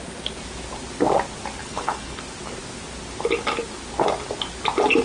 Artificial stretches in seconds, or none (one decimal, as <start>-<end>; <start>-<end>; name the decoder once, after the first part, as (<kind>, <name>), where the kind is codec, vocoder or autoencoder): 1.6-2.2 (codec, HILCodec)